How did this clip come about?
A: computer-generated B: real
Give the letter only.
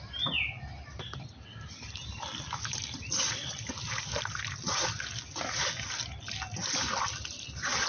B